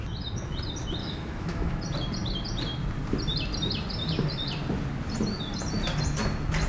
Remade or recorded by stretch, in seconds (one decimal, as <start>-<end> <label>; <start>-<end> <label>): 0.0-1.0 recorded; 1.0-1.8 remade; 1.8-6.7 recorded